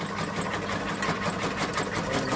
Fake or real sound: real